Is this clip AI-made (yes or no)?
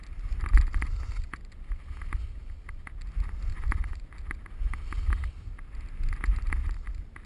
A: no